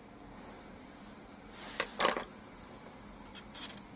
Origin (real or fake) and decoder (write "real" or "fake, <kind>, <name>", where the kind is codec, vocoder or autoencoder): real